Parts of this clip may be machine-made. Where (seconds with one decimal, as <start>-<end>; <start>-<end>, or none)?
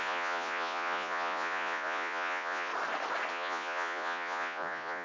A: 0.0-2.7; 3.3-5.0